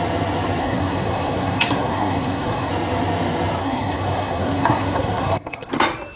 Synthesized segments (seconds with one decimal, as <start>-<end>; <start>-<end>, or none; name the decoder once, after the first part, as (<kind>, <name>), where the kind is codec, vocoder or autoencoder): 0.6-2.7 (codec, SNAC); 3.6-5.7